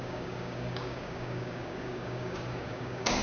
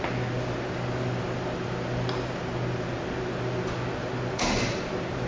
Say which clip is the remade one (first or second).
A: first